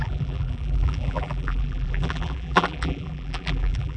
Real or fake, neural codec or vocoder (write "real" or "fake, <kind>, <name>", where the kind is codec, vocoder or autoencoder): fake, vocoder, BigVGAN v2